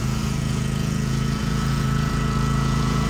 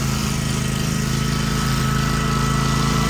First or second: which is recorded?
second